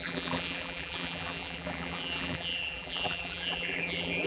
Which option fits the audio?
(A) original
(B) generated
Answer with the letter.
B